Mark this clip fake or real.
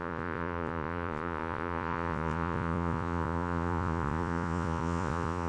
fake